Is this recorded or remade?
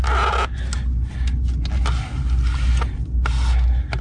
recorded